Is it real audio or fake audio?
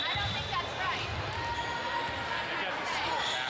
real